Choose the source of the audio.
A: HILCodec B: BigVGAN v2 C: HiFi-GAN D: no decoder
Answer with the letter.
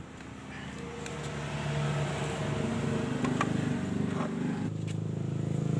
D